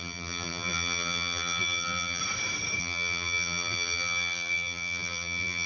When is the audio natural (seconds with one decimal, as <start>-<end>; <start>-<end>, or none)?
2.2-2.8